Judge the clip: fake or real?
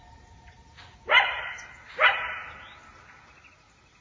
real